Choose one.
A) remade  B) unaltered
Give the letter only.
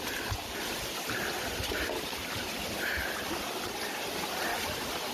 B